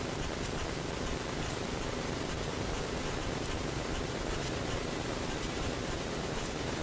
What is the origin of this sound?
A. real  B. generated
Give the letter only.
B